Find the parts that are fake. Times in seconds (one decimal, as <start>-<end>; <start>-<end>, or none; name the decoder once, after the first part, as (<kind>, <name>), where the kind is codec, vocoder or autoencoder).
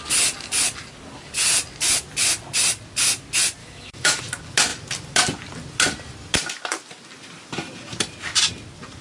3.6-4.2 (autoencoder, DAC-VAE)